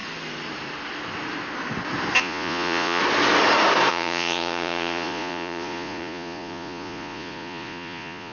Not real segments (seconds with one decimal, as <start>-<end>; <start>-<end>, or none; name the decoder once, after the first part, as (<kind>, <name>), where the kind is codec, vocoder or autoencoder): 2.2-3.0 (vocoder, Vocos); 3.9-8.3